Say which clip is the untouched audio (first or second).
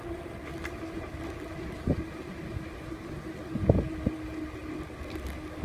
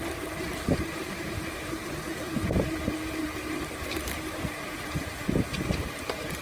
first